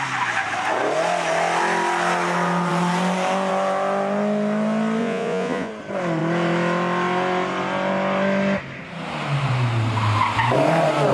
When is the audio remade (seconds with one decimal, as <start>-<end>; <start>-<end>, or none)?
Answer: 5.0-5.7